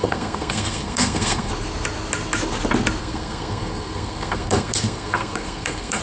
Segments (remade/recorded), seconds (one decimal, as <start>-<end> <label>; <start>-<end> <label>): 0.0-1.5 remade; 1.5-3.0 recorded; 3.0-6.0 remade